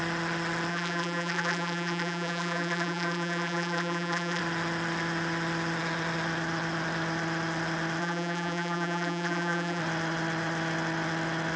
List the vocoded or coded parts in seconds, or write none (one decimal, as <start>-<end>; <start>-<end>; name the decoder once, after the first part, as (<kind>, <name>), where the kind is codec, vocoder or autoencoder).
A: 0.7-4.4 (vocoder, BigVGAN v2); 8.0-9.8